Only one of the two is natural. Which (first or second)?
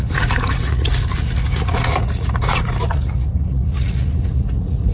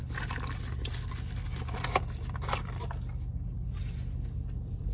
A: second